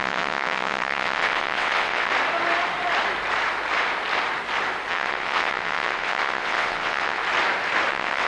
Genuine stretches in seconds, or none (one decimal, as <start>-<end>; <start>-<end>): 2.1-4.9; 7.2-7.9